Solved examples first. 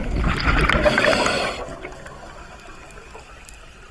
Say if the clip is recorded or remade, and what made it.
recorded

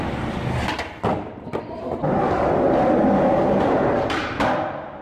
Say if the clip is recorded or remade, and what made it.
recorded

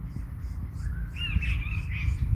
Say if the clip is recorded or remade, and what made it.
recorded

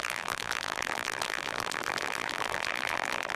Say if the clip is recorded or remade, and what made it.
remade, vocoder, BigVGAN v2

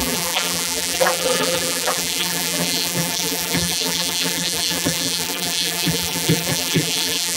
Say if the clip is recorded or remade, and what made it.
remade, vocoder, BigVGAN v2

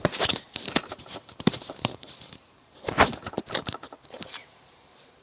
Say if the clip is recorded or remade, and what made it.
remade, vocoder, BigVGAN v2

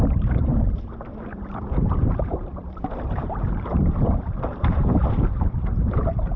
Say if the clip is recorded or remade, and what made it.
remade, vocoder, BigVGAN v2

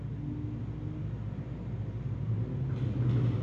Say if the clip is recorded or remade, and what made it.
recorded